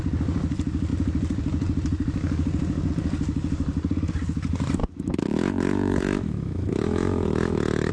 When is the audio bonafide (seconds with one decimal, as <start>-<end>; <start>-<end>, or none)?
0.0-4.8